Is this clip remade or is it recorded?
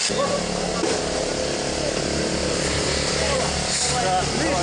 recorded